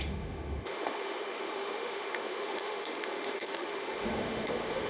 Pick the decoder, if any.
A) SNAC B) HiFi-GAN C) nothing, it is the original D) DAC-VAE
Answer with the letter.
D